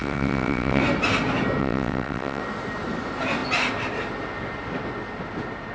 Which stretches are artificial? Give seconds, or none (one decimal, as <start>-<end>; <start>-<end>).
0.0-0.8; 1.6-2.4